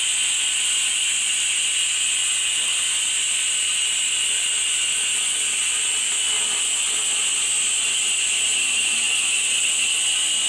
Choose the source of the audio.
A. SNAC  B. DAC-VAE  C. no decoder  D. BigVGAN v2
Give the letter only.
C